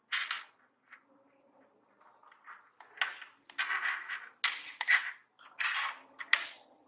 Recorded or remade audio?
recorded